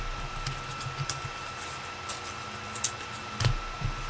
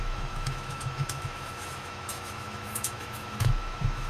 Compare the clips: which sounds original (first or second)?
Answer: first